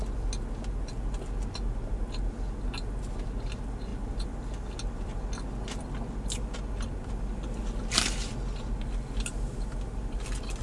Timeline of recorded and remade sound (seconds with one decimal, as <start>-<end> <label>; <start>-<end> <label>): 0.0-10.6 recorded